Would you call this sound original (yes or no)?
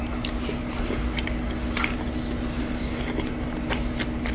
yes